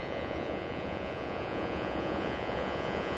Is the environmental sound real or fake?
fake